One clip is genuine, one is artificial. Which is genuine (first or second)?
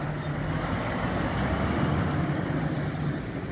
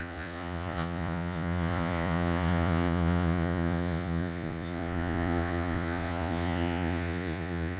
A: first